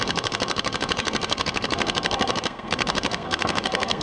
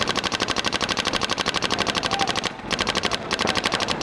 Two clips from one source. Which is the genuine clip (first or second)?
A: second